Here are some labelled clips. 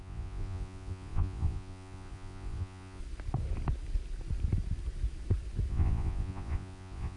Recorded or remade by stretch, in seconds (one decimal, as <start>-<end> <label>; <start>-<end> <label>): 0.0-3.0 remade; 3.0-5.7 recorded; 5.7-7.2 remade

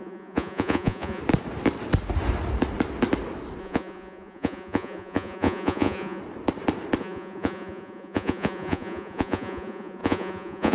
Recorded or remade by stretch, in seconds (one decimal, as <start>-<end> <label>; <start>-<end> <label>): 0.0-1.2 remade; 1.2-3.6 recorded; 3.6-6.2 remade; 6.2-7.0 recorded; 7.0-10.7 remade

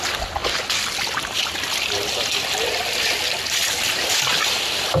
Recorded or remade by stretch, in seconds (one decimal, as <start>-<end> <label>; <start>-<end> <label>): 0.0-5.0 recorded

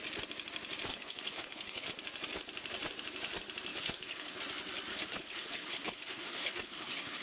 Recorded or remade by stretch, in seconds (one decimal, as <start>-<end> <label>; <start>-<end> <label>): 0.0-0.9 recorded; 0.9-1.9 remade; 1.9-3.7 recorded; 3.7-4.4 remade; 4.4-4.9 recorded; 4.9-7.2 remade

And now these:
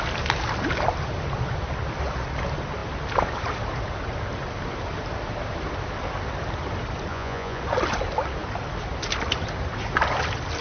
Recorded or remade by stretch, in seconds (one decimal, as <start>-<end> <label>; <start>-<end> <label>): 0.0-7.1 recorded; 7.1-7.6 remade; 7.6-10.6 recorded

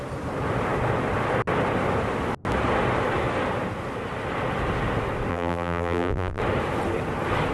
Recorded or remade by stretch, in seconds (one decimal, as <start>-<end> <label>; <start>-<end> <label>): 0.0-5.3 recorded; 5.3-6.4 remade; 6.4-7.5 recorded

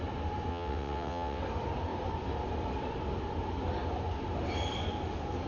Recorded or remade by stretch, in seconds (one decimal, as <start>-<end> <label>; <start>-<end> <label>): 0.0-0.5 recorded; 0.5-1.4 remade; 1.4-5.5 recorded

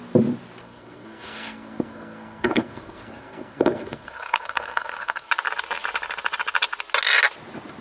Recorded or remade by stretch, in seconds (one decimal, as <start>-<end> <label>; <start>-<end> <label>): 0.0-0.6 recorded; 0.6-5.3 remade; 5.3-7.8 recorded